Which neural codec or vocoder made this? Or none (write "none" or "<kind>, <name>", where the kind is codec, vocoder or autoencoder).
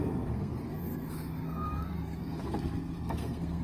codec, SNAC